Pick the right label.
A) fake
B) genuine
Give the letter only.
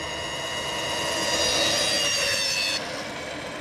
B